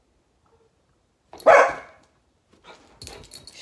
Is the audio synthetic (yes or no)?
no